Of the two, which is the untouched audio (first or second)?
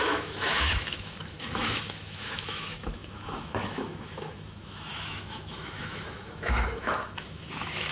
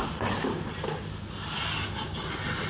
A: second